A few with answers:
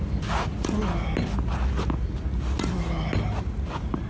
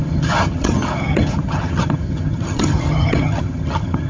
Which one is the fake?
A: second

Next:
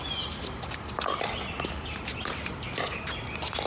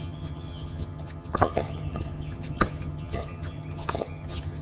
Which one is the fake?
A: second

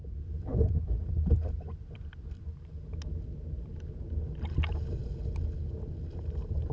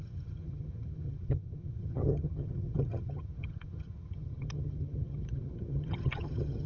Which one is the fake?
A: second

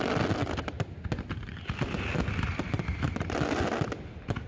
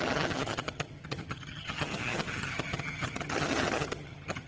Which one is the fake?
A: second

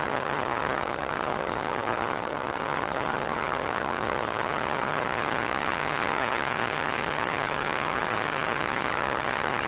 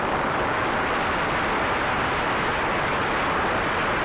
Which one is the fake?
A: first